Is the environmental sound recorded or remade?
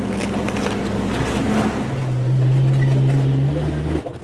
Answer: recorded